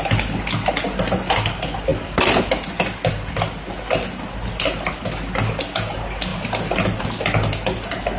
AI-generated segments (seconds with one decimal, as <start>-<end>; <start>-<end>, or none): none